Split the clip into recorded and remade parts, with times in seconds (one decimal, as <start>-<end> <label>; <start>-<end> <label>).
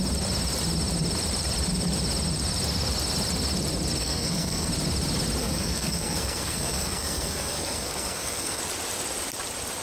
0.0-4.0 recorded; 4.0-4.7 remade; 4.7-5.4 recorded; 5.4-8.6 remade; 8.6-9.8 recorded